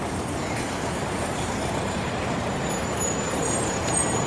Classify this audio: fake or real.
fake